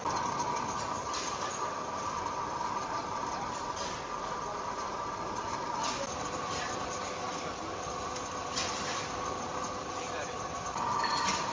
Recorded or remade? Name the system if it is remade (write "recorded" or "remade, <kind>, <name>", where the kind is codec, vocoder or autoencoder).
remade, vocoder, BigVGAN v2